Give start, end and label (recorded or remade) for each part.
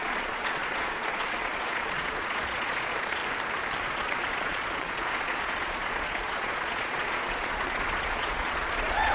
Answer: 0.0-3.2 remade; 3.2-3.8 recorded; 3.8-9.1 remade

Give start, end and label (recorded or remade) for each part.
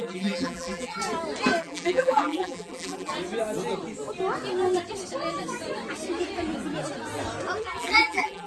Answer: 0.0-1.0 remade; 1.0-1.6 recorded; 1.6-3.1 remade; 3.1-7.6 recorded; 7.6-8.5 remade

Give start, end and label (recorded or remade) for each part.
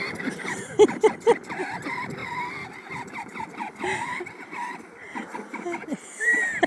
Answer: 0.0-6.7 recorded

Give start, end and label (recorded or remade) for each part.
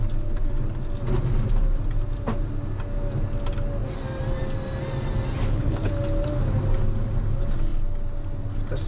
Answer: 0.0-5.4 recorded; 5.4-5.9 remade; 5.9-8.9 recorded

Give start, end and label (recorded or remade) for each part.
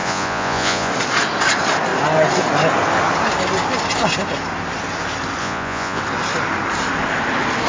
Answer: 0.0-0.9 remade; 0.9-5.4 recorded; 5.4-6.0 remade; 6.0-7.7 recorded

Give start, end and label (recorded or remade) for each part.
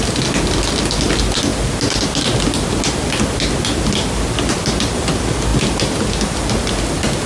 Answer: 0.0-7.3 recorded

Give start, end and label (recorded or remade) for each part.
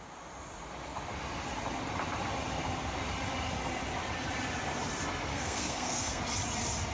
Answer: 0.0-5.3 recorded; 5.3-6.2 remade; 6.2-6.9 recorded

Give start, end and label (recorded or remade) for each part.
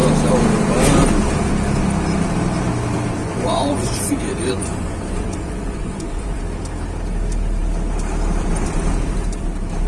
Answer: 0.0-3.2 recorded; 3.2-6.4 remade; 6.4-9.9 recorded